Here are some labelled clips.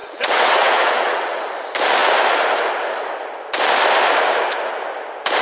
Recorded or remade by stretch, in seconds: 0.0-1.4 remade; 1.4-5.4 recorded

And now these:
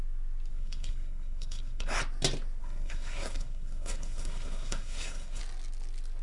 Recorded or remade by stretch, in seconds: 0.0-0.5 recorded; 0.5-2.0 remade; 2.0-2.6 recorded; 2.6-5.4 remade; 5.4-6.2 recorded